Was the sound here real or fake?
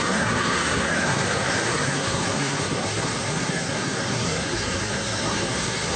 fake